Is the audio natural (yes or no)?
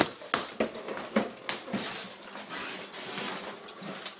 yes